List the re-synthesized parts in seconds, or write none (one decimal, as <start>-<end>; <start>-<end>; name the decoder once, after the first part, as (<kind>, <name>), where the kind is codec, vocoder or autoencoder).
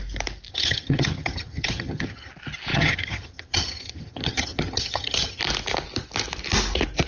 0.5-2.3 (vocoder, HiFi-GAN); 2.7-5.4